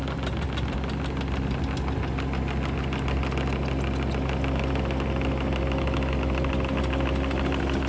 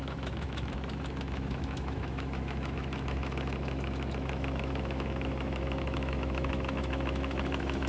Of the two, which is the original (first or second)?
first